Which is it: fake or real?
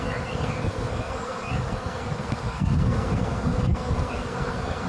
fake